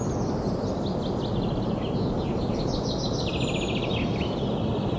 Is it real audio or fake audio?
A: real